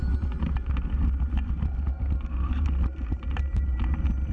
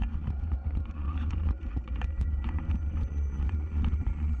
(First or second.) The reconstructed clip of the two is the second